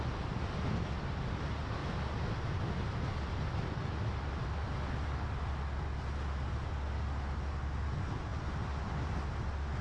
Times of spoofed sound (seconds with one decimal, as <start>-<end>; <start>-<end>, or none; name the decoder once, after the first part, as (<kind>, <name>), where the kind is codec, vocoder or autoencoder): none